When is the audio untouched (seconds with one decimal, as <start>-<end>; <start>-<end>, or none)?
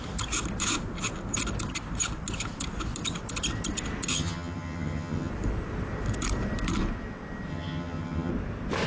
0.0-4.1; 5.3-7.5; 8.3-8.9